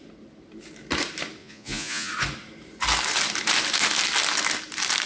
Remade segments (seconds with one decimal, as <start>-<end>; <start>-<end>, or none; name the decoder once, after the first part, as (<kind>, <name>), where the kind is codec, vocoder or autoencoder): 1.4-2.1 (vocoder, Vocos)